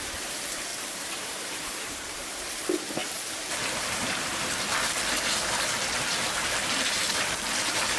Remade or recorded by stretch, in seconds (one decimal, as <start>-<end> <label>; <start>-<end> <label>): 0.0-0.7 recorded; 0.7-2.4 remade; 2.4-3.0 recorded; 3.0-4.8 remade; 4.8-8.0 recorded